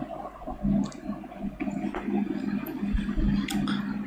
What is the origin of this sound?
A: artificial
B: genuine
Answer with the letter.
B